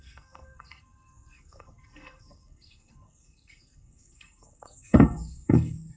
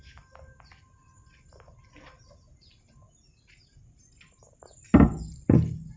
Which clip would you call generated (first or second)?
first